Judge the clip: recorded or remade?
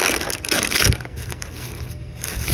remade